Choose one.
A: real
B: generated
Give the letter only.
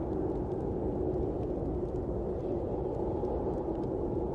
A